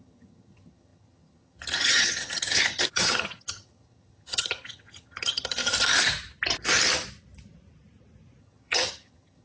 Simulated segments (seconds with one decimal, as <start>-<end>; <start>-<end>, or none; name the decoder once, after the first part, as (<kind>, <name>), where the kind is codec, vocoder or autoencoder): 0.0-5.6 (vocoder, HiFi-GAN); 8.4-9.4